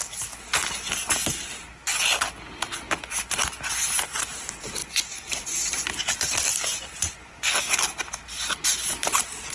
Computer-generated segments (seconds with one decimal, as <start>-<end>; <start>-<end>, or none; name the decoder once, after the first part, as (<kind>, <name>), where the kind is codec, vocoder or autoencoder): 4.8-5.7 (vocoder, Vocos); 6.5-7.8